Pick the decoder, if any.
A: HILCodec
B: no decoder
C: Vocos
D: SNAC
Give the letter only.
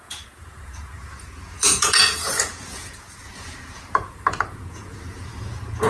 C